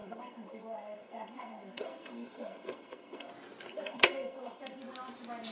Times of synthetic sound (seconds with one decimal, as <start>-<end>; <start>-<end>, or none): 0.0-3.3; 3.7-4.8